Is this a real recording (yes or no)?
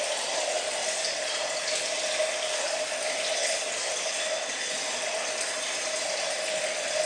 yes